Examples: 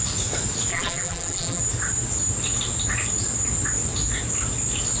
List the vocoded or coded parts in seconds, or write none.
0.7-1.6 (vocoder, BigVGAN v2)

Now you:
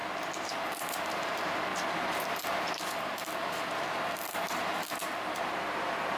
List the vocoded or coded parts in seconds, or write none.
0.7-1.7 (vocoder, BigVGAN v2); 5.4-6.2

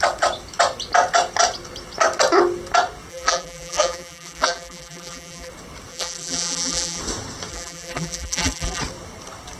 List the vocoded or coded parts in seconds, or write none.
3.1-5.5 (vocoder, BigVGAN v2); 5.9-7.0; 7.5-8.8

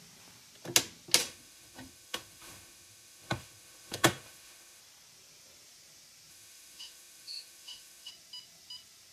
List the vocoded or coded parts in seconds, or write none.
1.2-4.8 (autoencoder, DAC-VAE); 6.3-8.1

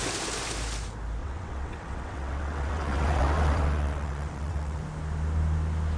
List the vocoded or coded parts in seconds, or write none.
1.2-4.8 (vocoder, WaveNeXt)

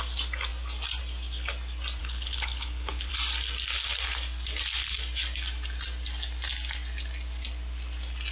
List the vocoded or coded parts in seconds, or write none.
2.0-3.1 (codec, HILCodec)

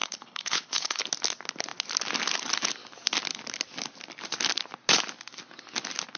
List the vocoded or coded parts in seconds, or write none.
0.0-1.0 (codec, HILCodec)